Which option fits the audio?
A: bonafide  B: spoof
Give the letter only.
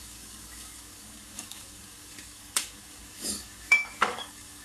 B